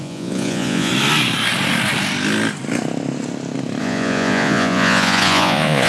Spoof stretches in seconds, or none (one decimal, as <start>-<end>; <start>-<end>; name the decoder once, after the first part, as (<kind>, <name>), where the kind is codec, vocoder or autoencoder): 0.0-0.9 (vocoder, Vocos); 3.8-5.9